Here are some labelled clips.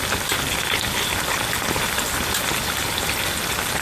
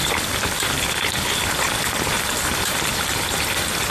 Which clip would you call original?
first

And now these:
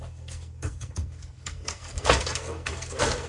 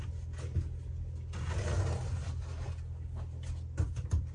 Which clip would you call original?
second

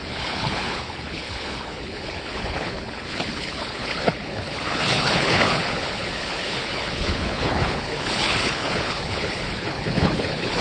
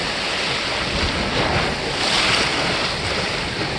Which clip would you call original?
second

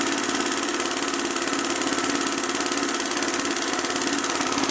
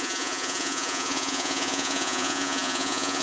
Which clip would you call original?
first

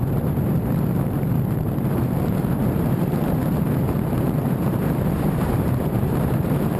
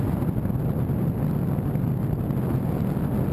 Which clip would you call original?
second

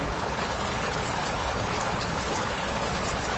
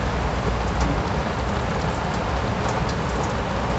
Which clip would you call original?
second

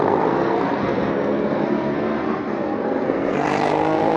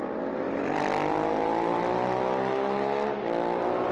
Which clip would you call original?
second